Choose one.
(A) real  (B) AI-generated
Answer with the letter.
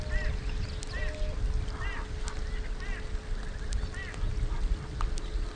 A